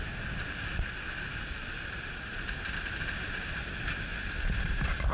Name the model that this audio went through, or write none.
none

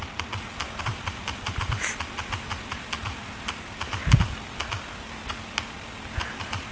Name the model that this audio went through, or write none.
none